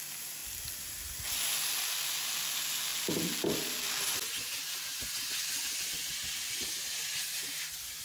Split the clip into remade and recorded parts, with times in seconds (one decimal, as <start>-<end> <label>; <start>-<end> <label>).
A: 0.0-8.0 recorded

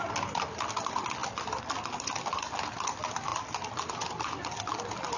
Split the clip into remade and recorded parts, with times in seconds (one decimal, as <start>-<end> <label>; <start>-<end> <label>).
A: 0.0-5.2 recorded

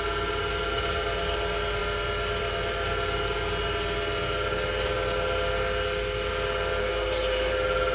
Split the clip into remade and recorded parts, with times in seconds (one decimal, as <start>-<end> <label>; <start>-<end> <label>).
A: 0.0-6.8 recorded; 6.8-7.5 remade; 7.5-7.9 recorded

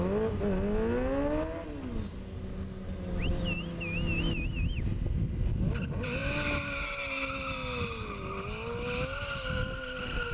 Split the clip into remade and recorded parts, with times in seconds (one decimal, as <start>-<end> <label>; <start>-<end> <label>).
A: 0.0-10.3 recorded

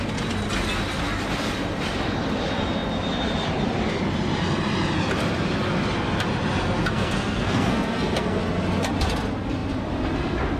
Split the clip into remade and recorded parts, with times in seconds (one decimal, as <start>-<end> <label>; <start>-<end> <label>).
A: 0.0-6.8 recorded; 6.8-8.4 remade; 8.4-10.6 recorded

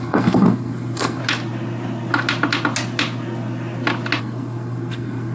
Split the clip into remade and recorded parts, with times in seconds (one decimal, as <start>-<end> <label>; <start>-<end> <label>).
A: 0.0-1.2 remade; 1.2-4.2 recorded; 4.2-5.3 remade

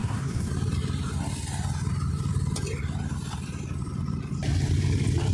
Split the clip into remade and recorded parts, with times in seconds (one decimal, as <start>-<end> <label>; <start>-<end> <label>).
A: 0.0-0.5 remade; 0.5-5.3 recorded